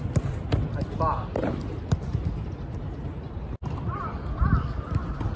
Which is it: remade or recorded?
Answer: recorded